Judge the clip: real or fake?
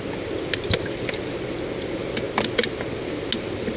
real